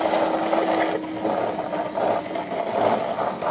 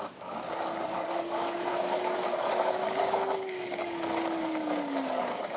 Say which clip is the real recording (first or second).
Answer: first